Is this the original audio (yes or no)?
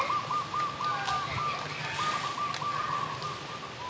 yes